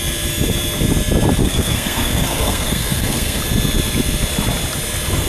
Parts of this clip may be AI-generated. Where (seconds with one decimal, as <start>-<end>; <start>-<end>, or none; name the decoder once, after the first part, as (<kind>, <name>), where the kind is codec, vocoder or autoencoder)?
1.4-3.4 (codec, SNAC)